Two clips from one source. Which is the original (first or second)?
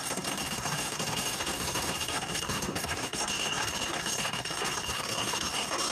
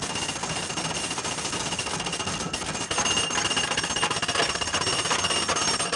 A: second